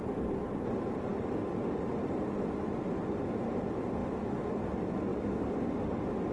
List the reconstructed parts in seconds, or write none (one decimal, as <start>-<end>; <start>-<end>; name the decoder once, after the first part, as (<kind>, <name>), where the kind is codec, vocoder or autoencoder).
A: 5.1-5.6 (codec, DAC)